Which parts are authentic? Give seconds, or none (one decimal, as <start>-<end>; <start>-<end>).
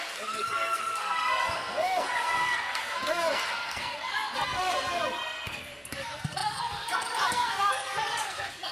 none